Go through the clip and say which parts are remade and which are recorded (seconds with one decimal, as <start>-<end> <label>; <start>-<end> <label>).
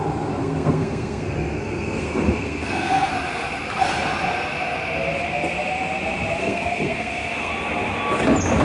0.0-0.4 recorded; 0.4-3.1 remade; 3.1-6.4 recorded; 6.4-7.5 remade; 7.5-8.6 recorded